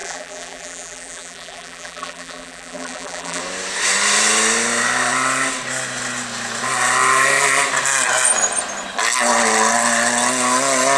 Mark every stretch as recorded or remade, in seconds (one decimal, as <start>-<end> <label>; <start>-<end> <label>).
0.0-3.4 remade; 3.4-11.0 recorded